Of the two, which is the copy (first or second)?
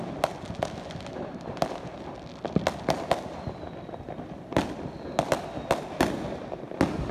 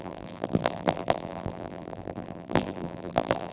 second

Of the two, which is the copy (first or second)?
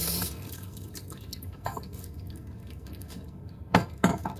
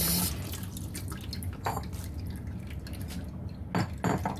first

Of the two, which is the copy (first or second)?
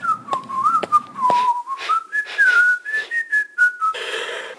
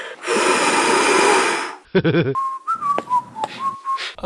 first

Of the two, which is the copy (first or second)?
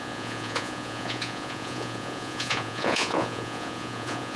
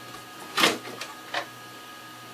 first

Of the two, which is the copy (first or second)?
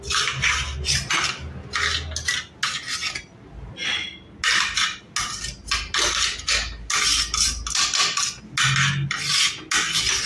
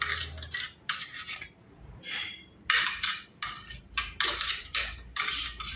second